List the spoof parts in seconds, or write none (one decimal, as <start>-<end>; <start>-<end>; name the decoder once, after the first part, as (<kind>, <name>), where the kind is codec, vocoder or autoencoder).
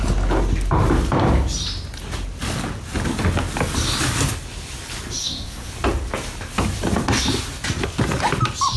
5.2-5.7 (codec, SNAC)